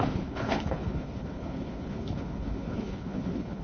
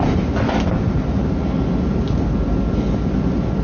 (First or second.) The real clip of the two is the second